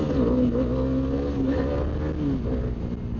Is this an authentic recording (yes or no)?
yes